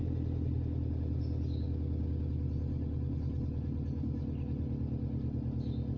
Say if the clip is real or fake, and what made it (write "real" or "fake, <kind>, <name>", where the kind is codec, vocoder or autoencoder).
real